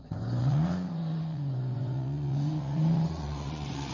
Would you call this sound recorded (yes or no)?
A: no